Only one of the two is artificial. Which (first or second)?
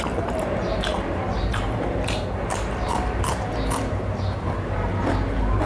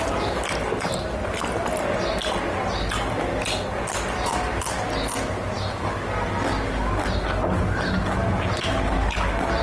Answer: first